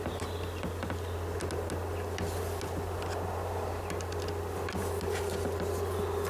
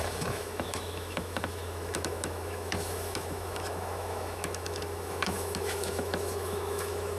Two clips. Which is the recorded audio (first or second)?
first